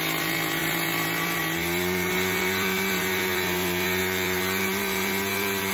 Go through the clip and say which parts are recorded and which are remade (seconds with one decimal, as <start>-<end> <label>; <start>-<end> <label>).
0.0-5.7 remade